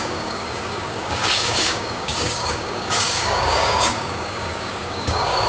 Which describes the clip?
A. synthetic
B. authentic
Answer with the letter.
A